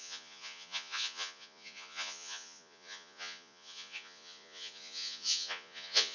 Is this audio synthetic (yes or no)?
yes